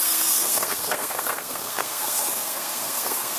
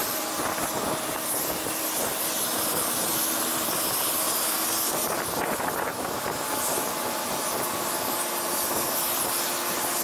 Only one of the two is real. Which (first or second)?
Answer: second